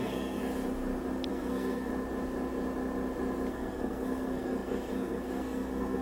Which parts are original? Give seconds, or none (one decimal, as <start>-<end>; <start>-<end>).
0.4-1.3; 1.9-3.5

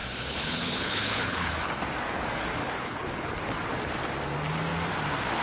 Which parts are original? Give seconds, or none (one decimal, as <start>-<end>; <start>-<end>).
1.8-2.6; 3.4-5.4